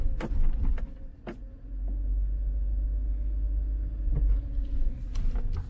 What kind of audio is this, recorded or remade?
recorded